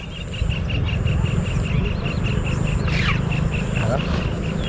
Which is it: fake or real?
real